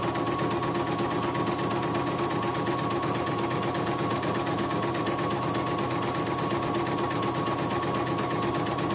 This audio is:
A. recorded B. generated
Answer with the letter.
A